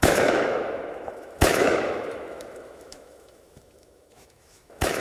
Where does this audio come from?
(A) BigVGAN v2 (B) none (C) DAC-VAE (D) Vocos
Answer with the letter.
C